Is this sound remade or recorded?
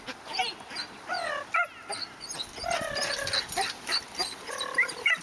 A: recorded